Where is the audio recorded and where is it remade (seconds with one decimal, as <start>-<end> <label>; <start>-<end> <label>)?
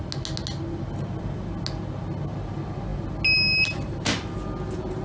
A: 0.0-5.0 recorded